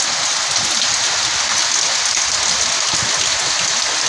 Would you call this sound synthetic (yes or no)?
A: no